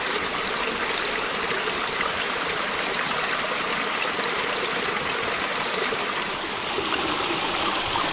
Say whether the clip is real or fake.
real